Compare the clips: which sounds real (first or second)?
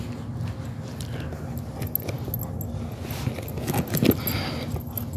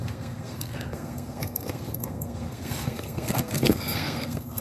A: first